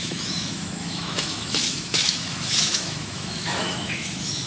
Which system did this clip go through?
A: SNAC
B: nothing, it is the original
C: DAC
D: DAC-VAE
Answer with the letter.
D